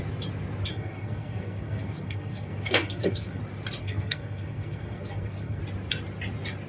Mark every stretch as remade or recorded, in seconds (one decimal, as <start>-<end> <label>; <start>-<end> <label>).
0.0-0.7 recorded; 0.7-3.4 remade; 3.4-3.8 recorded; 3.8-5.6 remade; 5.6-6.7 recorded

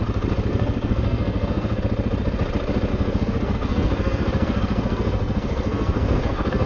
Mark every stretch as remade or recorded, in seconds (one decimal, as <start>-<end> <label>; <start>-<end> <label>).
0.0-0.5 recorded; 0.5-1.8 remade; 1.8-2.9 recorded; 2.9-6.7 remade

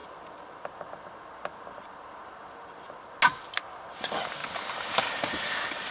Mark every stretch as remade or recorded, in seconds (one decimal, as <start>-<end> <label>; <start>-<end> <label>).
0.0-5.9 recorded

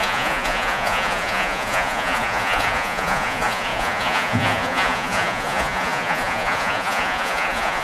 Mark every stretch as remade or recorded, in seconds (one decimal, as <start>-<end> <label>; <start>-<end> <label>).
0.0-7.8 remade